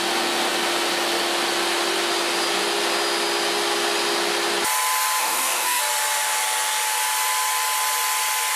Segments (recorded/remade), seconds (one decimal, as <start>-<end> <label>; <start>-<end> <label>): 0.0-5.2 recorded; 5.2-5.8 remade; 5.8-8.6 recorded